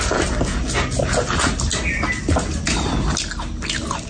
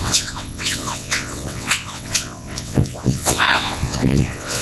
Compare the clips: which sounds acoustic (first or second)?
first